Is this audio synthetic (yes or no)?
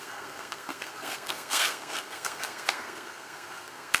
yes